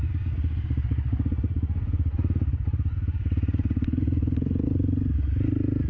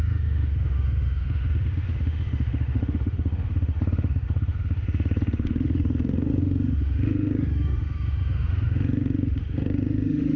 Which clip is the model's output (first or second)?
second